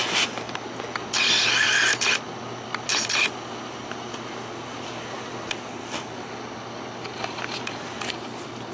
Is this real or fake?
real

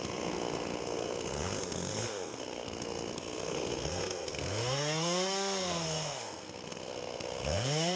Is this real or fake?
fake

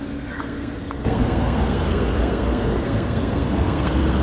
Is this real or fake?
fake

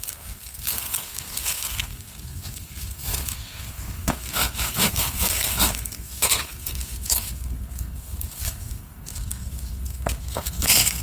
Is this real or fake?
fake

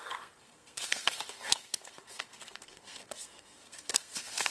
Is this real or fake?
fake